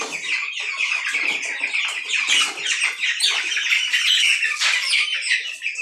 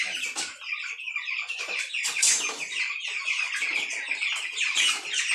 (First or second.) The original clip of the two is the first